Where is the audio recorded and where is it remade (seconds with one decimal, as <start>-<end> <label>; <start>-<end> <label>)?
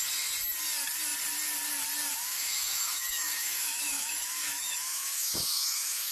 0.0-2.1 recorded; 2.1-6.1 remade